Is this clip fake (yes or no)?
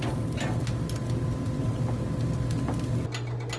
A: no